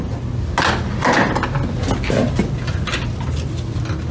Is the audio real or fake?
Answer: real